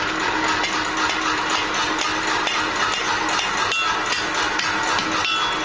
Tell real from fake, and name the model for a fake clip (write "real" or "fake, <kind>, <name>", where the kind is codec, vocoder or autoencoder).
real